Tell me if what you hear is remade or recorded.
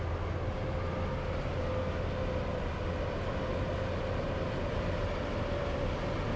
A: recorded